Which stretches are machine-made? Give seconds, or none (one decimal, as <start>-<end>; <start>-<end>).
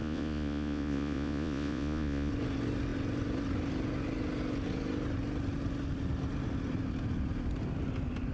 0.0-2.3